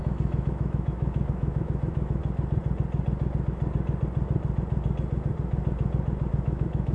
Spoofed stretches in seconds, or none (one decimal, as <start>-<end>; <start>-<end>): 0.0-2.2; 6.3-6.9